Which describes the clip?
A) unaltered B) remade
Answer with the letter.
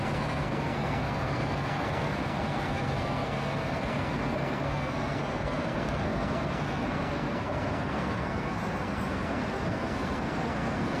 B